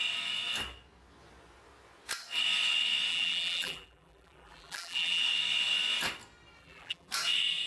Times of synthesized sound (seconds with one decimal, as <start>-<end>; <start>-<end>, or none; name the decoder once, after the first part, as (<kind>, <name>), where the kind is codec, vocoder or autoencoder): 3.1-5.2 (vocoder, BigVGAN v2); 6.6-7.1